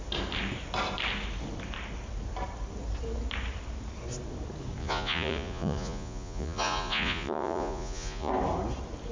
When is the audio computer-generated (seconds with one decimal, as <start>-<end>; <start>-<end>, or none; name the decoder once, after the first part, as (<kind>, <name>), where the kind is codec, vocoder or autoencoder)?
4.8-8.3 (vocoder, Vocos)